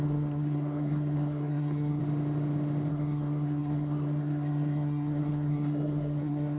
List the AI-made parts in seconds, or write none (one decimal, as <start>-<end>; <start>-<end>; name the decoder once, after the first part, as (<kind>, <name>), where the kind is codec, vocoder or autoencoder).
0.0-2.0 (codec, SNAC); 2.9-6.6